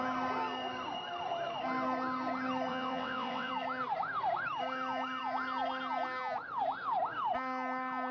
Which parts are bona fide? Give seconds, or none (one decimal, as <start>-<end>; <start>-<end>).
0.0-2.7; 3.5-8.1